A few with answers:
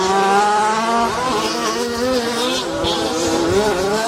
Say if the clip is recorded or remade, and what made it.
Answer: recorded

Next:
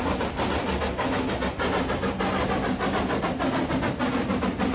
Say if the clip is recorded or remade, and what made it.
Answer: recorded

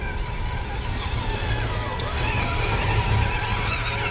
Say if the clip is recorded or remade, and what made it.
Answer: recorded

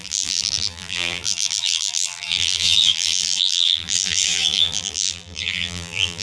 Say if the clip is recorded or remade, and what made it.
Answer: remade, vocoder, BigVGAN v2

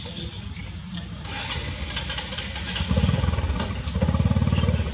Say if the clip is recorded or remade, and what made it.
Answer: recorded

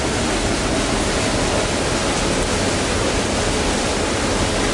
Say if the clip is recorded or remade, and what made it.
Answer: recorded